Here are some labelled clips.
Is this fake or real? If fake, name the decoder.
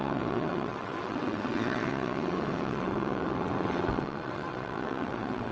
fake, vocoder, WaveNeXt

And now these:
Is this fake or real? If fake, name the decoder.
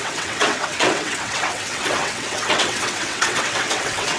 fake, vocoder, WaveNeXt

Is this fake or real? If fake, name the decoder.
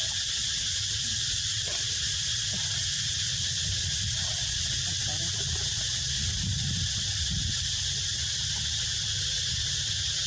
real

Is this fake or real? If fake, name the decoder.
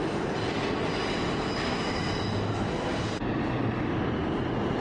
real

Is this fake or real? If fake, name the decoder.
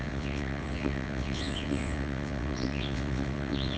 fake, vocoder, WaveNeXt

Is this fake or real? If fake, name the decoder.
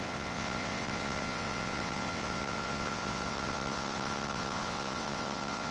fake, vocoder, WaveNeXt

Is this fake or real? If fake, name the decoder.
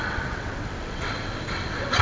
fake, vocoder, WaveNeXt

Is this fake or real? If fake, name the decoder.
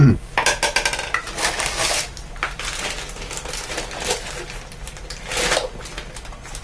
real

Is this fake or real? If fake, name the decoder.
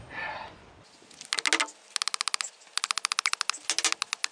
real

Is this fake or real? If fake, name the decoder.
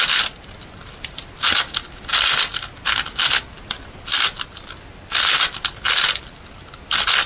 real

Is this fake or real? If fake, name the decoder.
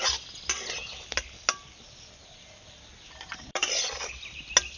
real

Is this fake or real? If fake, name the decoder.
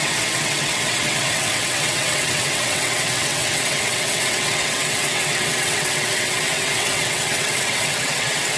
fake, vocoder, WaveNeXt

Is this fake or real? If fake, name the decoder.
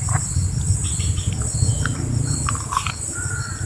real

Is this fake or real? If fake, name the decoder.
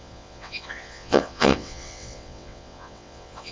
fake, vocoder, WaveNeXt